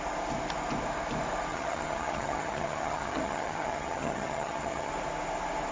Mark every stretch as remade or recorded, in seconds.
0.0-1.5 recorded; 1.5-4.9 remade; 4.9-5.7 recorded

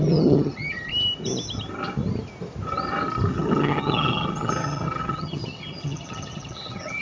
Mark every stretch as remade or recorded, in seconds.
0.0-0.9 remade; 0.9-3.3 recorded; 3.3-7.0 remade

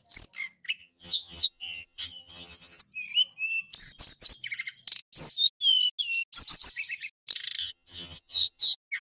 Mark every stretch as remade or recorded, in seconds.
0.0-0.8 recorded; 0.8-2.8 remade; 2.8-7.6 recorded; 7.6-8.6 remade; 8.6-9.1 recorded

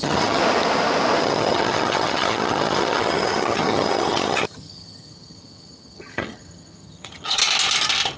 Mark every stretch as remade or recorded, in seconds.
0.0-0.4 remade; 0.4-1.2 recorded; 1.2-7.4 remade; 7.4-8.2 recorded

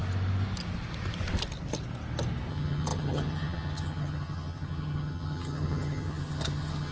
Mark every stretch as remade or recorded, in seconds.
0.0-2.5 recorded; 2.5-6.9 remade

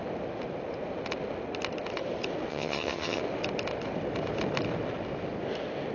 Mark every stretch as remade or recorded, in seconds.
0.0-2.5 recorded; 2.5-3.2 remade; 3.2-5.9 recorded

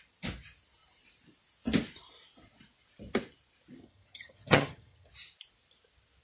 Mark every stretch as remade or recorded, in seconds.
0.0-3.8 recorded; 3.8-5.1 remade; 5.1-6.2 recorded